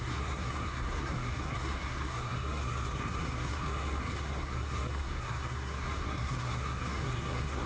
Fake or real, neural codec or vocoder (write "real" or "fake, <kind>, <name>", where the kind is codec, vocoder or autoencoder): fake, codec, SNAC